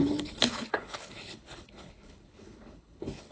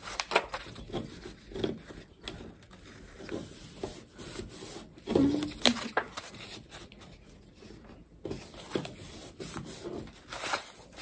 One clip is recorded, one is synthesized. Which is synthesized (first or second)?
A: first